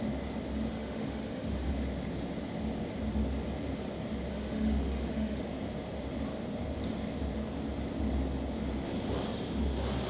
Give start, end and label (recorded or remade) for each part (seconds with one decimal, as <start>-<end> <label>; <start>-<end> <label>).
0.0-0.7 recorded; 0.7-1.7 remade; 1.7-4.3 recorded; 4.3-5.4 remade; 5.4-10.1 recorded